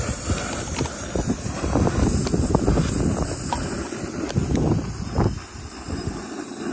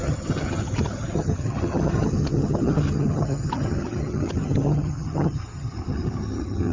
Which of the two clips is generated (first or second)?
second